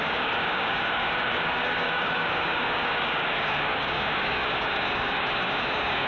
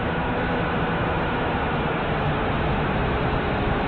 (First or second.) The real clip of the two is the second